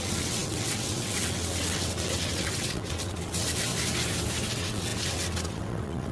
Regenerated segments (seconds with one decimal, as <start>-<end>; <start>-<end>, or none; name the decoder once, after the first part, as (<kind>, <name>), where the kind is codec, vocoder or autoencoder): 0.0-3.7 (vocoder, WaveNeXt); 4.5-6.1